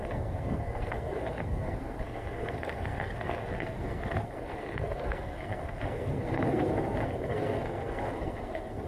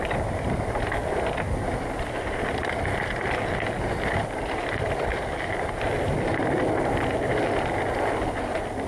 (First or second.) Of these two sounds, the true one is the second